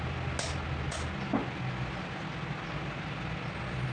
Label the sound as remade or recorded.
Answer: recorded